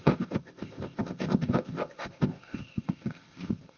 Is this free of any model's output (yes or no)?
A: no